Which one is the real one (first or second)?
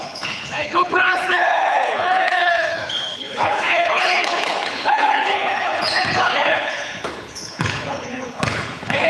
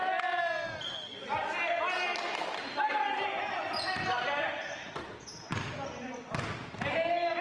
second